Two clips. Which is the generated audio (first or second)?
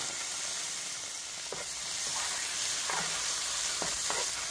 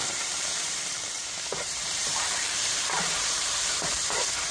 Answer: second